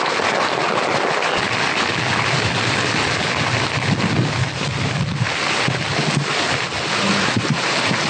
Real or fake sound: real